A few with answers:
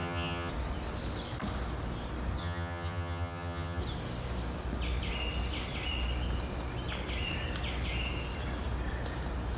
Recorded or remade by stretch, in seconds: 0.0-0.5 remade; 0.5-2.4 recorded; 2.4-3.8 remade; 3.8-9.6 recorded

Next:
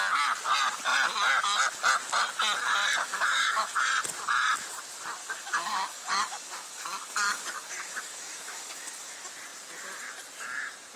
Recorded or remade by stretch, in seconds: 0.0-3.0 recorded; 3.0-3.8 remade; 3.8-5.2 recorded; 5.2-9.1 remade; 9.1-11.0 recorded

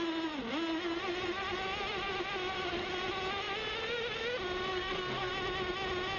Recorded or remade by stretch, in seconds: 0.0-4.7 recorded; 4.7-5.3 remade; 5.3-6.2 recorded

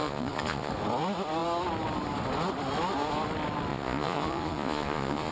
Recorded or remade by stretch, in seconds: 0.0-0.7 remade; 0.7-3.7 recorded; 3.7-5.3 remade

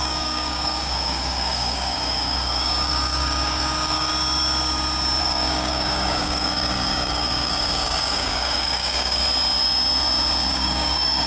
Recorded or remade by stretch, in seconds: 0.0-4.1 remade; 4.1-5.2 recorded; 5.2-9.2 remade; 9.2-10.5 recorded; 10.5-11.3 remade

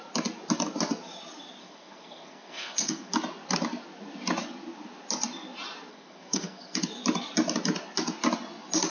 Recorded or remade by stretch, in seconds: 0.0-1.6 recorded; 1.6-3.1 remade; 3.1-5.9 recorded; 5.9-6.8 remade; 6.8-8.9 recorded

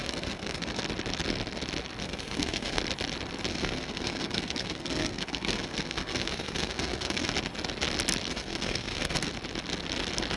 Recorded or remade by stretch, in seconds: 0.0-0.8 remade; 0.8-2.0 recorded; 2.0-2.8 remade; 2.8-3.5 recorded; 3.5-7.3 remade; 7.3-8.3 recorded; 8.3-9.3 remade; 9.3-10.4 recorded

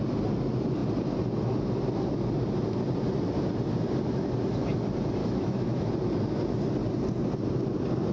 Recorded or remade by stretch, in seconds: 0.0-5.2 recorded; 5.2-5.9 remade; 5.9-8.1 recorded